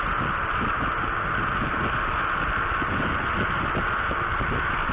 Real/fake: real